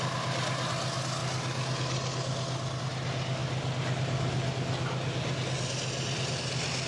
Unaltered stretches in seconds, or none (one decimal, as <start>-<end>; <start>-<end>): 0.0-6.9